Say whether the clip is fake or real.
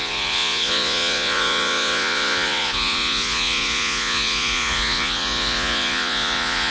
fake